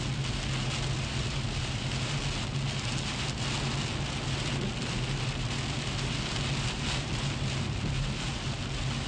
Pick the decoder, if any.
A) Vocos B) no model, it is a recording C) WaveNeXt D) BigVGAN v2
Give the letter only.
B